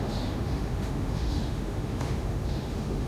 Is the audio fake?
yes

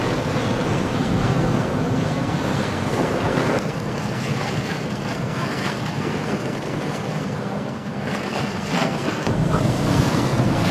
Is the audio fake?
yes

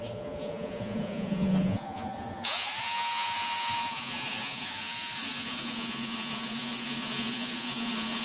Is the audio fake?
yes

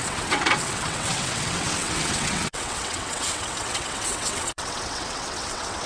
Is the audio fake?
yes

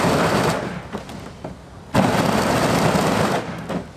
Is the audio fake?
no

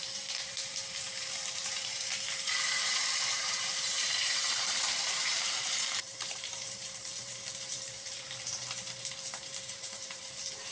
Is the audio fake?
yes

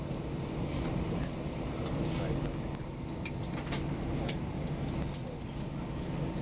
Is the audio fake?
no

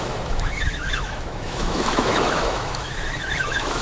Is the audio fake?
yes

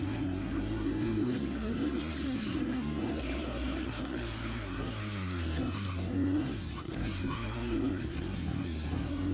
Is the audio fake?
yes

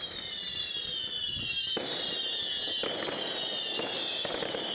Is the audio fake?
no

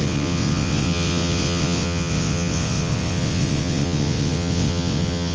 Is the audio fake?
yes